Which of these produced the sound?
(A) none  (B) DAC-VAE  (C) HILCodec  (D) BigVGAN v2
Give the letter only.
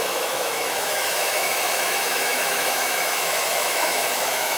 B